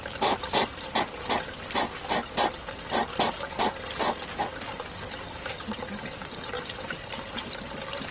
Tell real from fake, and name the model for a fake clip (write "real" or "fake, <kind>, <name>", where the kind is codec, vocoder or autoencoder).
real